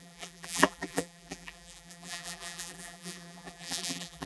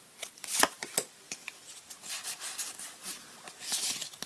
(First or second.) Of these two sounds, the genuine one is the second